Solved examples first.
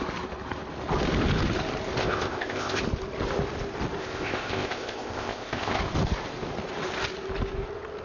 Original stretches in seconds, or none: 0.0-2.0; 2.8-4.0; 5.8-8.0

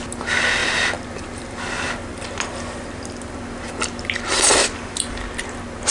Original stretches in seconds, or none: 0.0-0.6; 3.7-4.6; 5.5-5.9

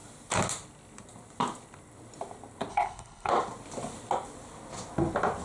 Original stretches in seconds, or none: 0.0-2.7; 3.3-5.4

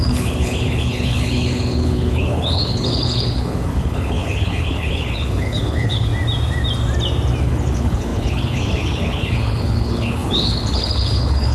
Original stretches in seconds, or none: 6.1-7.4

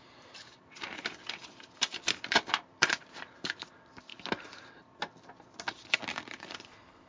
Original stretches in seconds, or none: 4.1-6.0

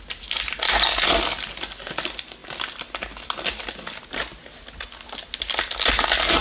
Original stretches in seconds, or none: 0.0-6.4

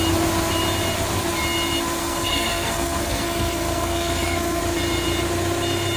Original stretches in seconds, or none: 0.0-2.0; 4.6-6.0